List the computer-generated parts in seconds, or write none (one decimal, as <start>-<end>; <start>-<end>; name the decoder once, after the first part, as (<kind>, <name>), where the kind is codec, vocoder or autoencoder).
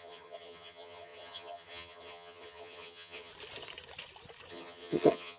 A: 0.0-3.3 (vocoder, HiFi-GAN); 4.5-5.4